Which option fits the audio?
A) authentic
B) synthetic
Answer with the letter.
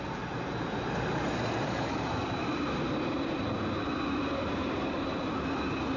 A